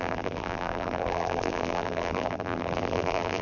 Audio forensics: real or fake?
fake